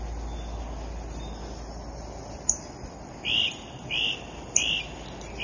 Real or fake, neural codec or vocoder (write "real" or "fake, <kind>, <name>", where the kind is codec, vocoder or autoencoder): real